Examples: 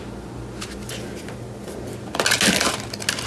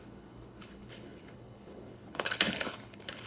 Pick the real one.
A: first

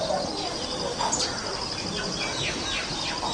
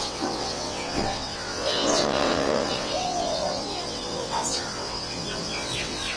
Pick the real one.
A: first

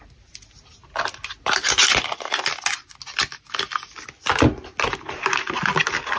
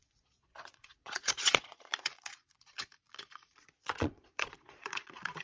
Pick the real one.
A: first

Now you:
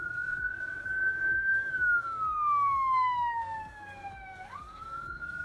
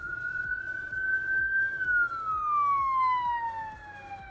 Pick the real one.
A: second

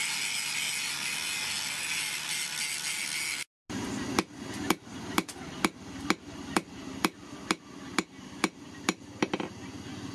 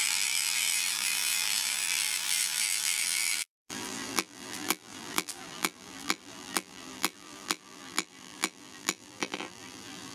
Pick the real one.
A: first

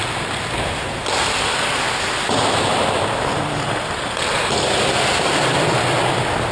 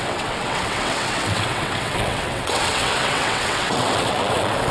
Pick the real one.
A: first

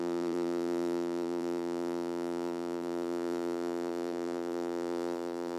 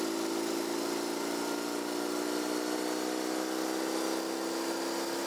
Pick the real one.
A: second